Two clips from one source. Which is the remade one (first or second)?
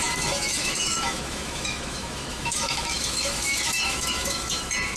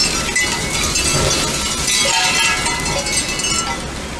first